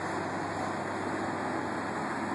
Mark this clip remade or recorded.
recorded